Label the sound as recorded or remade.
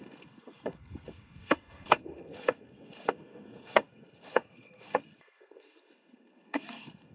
remade